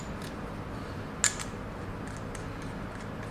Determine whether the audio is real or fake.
real